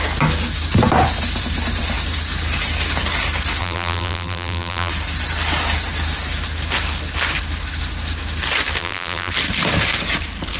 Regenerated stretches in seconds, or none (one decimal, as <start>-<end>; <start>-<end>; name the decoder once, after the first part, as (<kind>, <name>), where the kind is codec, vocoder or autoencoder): 3.6-4.9 (vocoder, BigVGAN v2); 8.8-9.3